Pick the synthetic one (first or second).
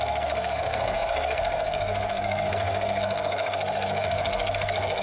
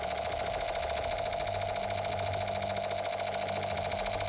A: first